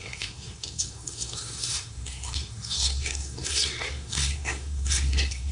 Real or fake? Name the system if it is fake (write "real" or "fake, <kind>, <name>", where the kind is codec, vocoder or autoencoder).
fake, codec, SNAC